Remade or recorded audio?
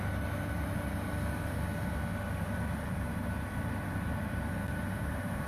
recorded